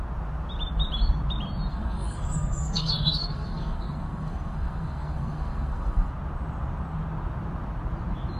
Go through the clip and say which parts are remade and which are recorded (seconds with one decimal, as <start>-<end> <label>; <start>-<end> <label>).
0.0-1.7 recorded; 1.7-6.1 remade; 6.1-8.4 recorded